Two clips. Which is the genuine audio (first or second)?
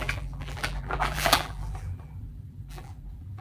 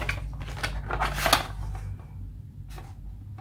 second